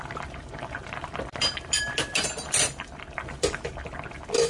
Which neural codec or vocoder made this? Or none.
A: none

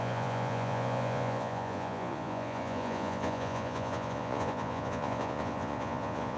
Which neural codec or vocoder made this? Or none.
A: vocoder, Vocos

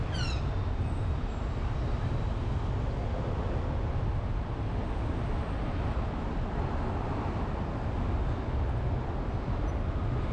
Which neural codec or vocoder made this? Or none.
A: none